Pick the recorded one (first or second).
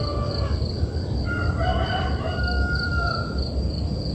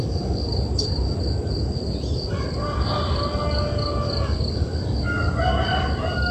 second